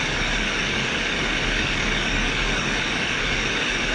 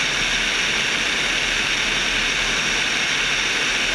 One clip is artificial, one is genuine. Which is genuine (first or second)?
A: second